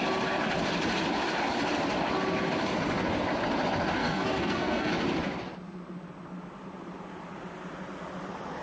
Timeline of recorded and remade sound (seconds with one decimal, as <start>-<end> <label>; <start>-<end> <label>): 0.0-4.0 recorded; 4.0-4.9 remade; 4.9-8.6 recorded